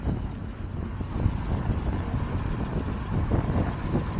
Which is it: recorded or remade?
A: recorded